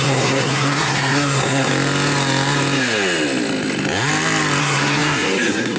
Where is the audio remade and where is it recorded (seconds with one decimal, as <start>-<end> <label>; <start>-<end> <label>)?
0.0-1.7 remade; 1.7-4.6 recorded; 4.6-5.8 remade

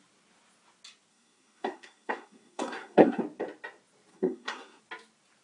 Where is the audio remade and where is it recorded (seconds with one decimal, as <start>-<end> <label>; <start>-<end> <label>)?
0.0-1.1 recorded; 1.1-3.2 remade; 3.2-4.1 recorded; 4.1-4.8 remade; 4.8-5.4 recorded

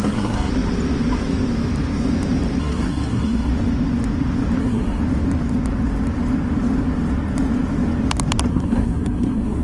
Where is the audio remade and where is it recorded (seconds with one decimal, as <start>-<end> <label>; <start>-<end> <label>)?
0.0-0.5 remade; 0.5-2.6 recorded; 2.6-3.5 remade; 3.5-4.6 recorded; 4.6-5.0 remade; 5.0-8.5 recorded; 8.5-9.6 remade

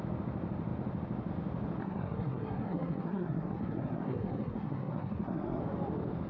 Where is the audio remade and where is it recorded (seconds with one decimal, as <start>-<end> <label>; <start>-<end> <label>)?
0.0-1.8 recorded; 1.8-5.6 remade; 5.6-6.3 recorded

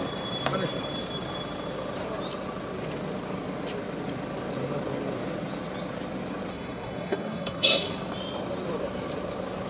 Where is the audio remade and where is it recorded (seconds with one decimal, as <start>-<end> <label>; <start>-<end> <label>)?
0.0-6.5 recorded; 6.5-7.9 remade; 7.9-9.7 recorded

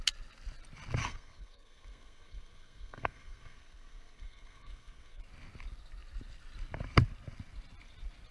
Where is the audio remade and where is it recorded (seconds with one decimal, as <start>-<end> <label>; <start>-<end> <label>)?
0.0-1.0 recorded; 1.0-5.2 remade; 5.2-8.3 recorded